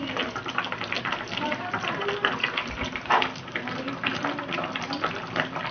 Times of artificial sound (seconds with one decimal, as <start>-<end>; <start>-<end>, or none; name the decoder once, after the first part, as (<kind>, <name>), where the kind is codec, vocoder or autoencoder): none